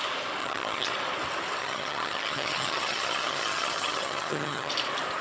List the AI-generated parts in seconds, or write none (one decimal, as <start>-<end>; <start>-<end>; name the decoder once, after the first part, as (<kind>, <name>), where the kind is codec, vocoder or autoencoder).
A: 0.4-0.9 (vocoder, HiFi-GAN); 1.6-4.7